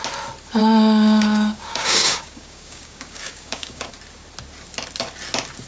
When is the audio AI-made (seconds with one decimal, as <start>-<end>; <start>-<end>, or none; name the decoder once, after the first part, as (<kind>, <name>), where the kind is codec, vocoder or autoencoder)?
0.6-3.9 (codec, DAC)